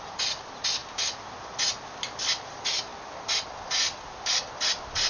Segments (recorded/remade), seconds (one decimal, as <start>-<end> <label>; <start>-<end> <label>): 0.0-5.1 recorded